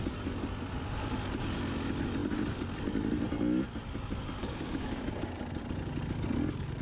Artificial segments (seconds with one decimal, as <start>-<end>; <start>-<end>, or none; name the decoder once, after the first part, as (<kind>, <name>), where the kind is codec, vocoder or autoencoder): 4.4-5.2 (codec, DAC)